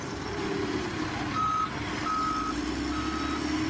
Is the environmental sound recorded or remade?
recorded